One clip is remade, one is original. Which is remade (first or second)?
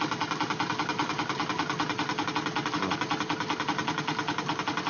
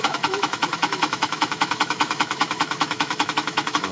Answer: second